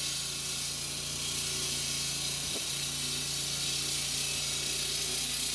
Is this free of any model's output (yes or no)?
yes